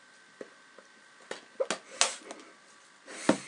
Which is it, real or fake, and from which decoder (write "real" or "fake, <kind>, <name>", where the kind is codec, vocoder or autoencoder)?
real